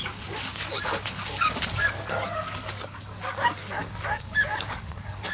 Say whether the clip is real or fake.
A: fake